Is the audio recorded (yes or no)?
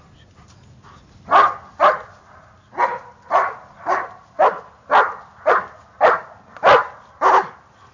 yes